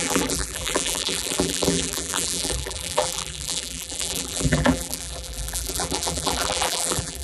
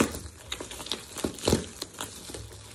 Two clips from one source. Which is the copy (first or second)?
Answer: first